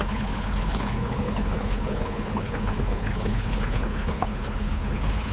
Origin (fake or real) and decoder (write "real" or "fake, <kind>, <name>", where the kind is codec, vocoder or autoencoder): fake, codec, HILCodec